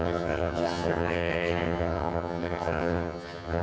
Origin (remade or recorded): remade